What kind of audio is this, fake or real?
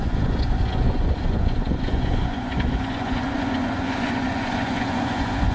fake